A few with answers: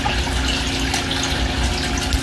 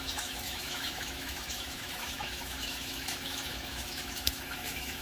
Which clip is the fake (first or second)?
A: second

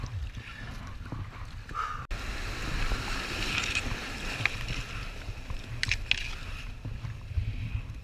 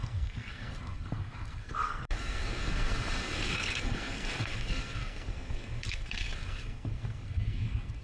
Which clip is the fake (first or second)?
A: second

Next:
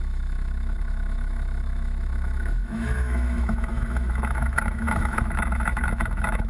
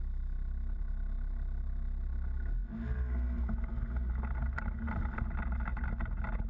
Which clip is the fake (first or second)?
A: first